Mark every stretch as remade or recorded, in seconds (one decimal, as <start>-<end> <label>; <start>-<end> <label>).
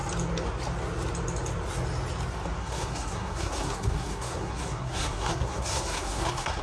0.0-2.6 recorded; 2.6-6.6 remade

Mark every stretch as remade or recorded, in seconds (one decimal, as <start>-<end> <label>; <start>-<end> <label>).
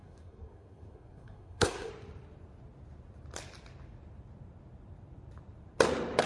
0.0-1.9 remade; 1.9-6.3 recorded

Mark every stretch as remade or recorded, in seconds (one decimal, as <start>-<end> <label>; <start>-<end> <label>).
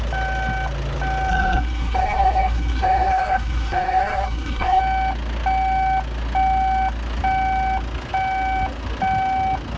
0.0-1.3 recorded; 1.3-4.8 remade; 4.8-9.8 recorded